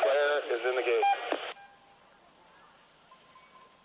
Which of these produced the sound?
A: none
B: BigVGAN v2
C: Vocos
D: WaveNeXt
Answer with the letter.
A